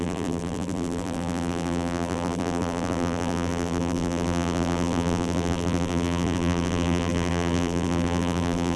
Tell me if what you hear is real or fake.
fake